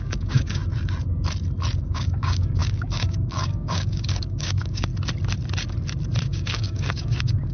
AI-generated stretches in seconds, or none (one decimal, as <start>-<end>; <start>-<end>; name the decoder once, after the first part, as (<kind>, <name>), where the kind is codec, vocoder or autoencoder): 0.0-0.6 (codec, DAC); 1.8-4.9; 6.2-7.5